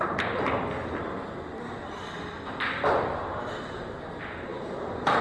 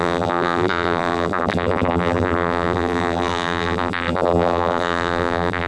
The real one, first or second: first